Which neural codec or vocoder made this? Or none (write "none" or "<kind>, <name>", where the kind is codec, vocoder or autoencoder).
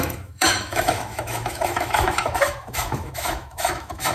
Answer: autoencoder, DAC-VAE